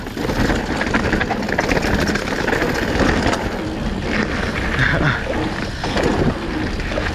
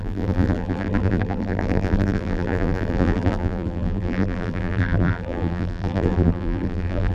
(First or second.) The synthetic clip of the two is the second